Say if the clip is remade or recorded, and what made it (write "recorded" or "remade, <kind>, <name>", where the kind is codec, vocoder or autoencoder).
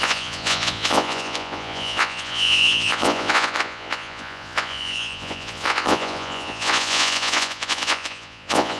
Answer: remade, vocoder, Vocos